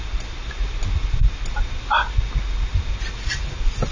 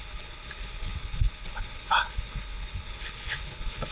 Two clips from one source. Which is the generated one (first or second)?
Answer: second